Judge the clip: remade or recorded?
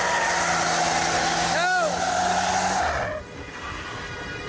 recorded